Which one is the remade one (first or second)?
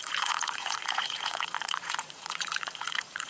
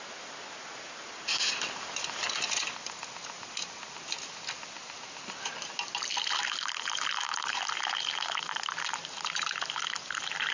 first